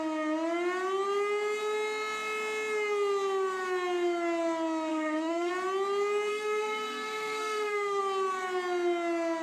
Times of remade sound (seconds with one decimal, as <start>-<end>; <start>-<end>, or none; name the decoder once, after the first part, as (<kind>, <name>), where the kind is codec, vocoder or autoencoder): 4.9-5.5 (codec, SNAC); 6.3-8.0